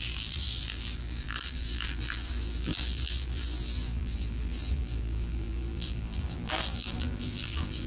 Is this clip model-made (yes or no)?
yes